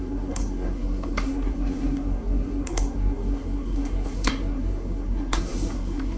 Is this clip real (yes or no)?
no